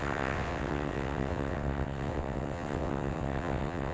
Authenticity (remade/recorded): remade